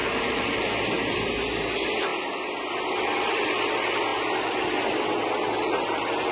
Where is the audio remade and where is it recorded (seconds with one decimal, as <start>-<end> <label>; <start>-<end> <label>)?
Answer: 0.0-0.7 remade; 0.7-6.3 recorded